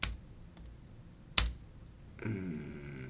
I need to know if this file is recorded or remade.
recorded